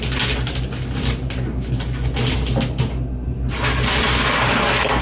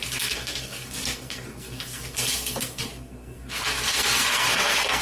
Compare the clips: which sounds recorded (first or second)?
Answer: first